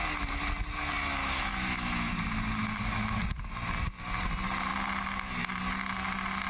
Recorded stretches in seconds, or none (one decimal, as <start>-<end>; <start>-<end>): 0.0-1.2; 2.1-2.6; 3.2-6.5